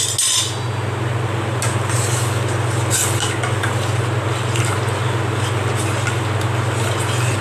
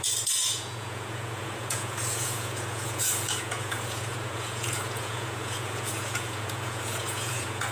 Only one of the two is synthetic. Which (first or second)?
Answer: second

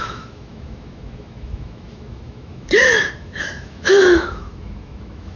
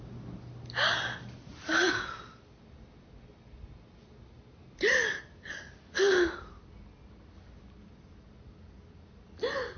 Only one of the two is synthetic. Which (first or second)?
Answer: first